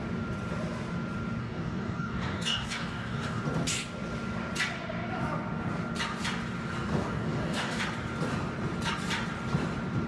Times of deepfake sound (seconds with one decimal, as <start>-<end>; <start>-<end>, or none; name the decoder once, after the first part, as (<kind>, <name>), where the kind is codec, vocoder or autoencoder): 1.4-3.4 (codec, DAC); 6.9-7.8

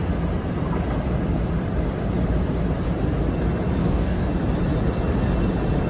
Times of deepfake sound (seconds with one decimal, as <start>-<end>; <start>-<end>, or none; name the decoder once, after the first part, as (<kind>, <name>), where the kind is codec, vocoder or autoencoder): 3.8-4.3 (codec, DAC)

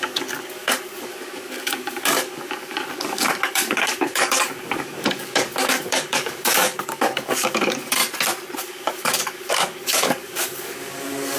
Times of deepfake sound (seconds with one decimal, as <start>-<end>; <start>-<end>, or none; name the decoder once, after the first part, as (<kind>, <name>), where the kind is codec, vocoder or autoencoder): 0.0-8.0 (codec, DAC); 8.6-11.4

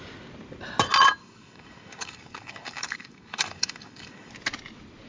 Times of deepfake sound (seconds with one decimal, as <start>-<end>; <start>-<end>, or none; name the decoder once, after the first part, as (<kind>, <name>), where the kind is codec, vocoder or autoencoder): 1.2-4.3 (codec, DAC)

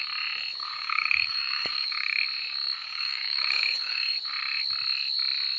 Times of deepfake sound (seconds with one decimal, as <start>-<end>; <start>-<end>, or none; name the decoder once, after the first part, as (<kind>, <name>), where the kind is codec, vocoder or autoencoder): 0.6-2.2 (codec, DAC); 2.8-4.2

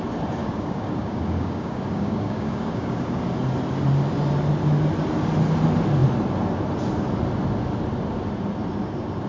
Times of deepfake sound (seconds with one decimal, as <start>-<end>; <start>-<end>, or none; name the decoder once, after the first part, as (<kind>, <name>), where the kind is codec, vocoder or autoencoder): 0.4-3.2 (codec, DAC)

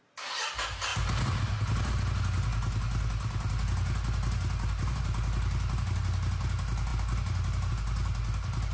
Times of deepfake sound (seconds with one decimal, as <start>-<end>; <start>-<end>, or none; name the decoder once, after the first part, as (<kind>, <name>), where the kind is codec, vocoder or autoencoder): none

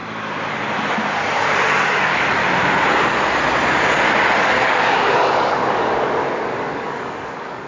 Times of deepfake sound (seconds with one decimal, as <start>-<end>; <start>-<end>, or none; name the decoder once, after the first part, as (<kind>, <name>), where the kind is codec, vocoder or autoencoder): 1.4-2.4 (codec, DAC); 4.4-7.7